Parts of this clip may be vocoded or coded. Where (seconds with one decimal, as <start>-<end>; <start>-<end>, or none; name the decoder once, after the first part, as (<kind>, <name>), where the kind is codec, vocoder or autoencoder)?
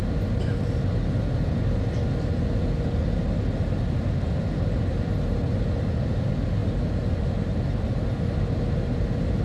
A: none